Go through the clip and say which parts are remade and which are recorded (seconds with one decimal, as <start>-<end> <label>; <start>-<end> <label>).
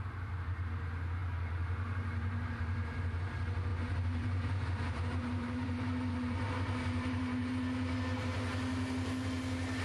0.0-1.2 recorded; 1.2-3.3 remade; 3.3-3.7 recorded; 3.7-7.5 remade; 7.5-9.8 recorded